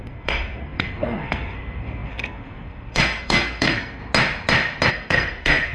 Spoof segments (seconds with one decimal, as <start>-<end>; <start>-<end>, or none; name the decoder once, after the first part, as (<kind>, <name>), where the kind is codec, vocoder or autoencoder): 0.0-4.0 (codec, SNAC); 4.9-5.7